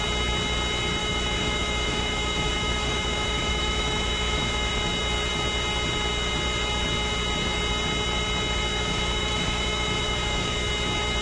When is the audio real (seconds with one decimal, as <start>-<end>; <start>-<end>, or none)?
0.0-1.0; 4.7-8.7; 10.7-11.2